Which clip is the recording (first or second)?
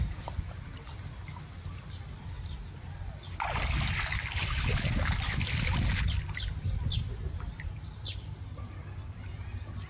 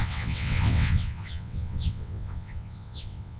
first